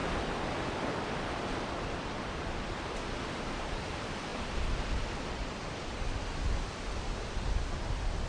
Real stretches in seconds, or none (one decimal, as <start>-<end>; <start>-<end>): 0.0-0.5; 4.3-5.2